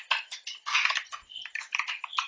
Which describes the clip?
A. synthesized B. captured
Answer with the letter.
B